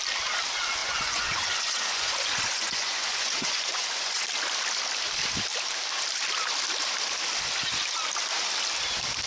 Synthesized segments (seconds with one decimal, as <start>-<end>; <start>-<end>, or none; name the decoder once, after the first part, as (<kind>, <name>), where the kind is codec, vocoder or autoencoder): 0.8-4.2 (vocoder, Vocos)

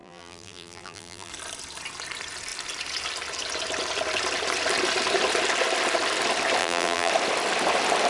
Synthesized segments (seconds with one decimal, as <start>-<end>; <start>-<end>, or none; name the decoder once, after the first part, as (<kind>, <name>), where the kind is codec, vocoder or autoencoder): 0.0-1.3 (vocoder, BigVGAN v2); 6.6-7.1